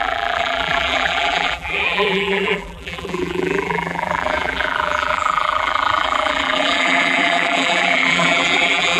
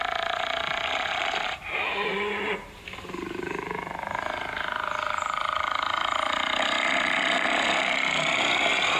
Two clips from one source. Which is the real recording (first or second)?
second